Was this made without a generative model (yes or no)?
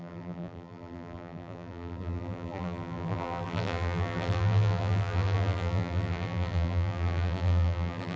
no